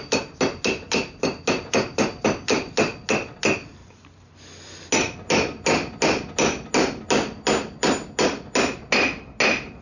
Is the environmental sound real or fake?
real